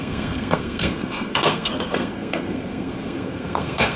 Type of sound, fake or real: fake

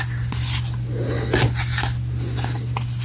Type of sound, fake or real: real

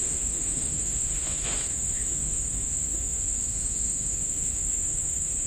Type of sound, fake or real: fake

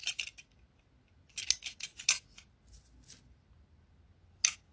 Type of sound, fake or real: real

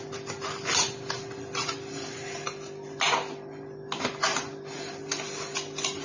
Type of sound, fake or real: real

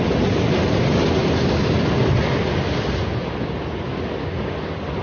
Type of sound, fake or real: real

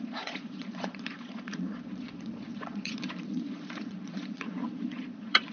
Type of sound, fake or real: fake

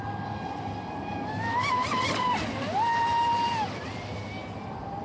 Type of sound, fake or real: real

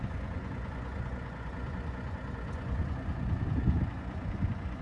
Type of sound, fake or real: fake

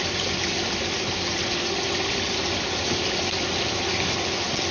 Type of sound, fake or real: real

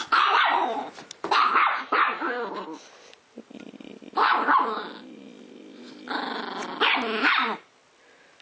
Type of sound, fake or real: real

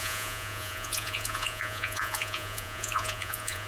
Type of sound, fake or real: fake